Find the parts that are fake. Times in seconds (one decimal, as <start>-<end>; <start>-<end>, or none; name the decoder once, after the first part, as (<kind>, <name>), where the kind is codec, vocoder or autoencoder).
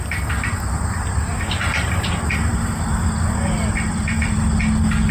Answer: 1.3-4.4 (vocoder, BigVGAN v2)